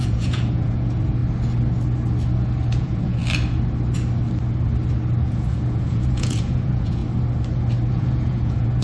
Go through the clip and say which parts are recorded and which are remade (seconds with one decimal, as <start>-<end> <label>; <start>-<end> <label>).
0.0-1.2 remade; 1.2-2.7 recorded; 2.7-3.2 remade; 3.2-5.2 recorded; 5.2-7.0 remade; 7.0-7.9 recorded; 7.9-8.8 remade